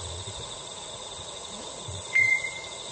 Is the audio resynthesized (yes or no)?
yes